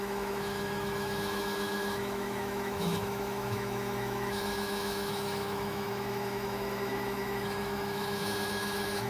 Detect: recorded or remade remade